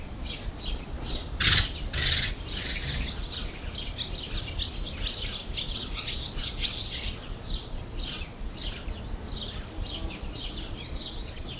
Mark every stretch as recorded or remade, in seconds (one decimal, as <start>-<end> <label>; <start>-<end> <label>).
0.0-1.2 remade; 1.2-5.6 recorded; 5.6-8.6 remade; 8.6-10.1 recorded; 10.1-11.6 remade